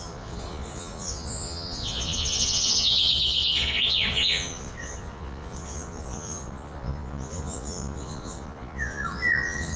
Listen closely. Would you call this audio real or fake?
fake